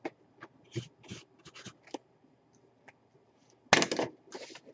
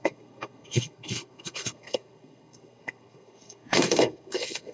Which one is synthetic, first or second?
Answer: second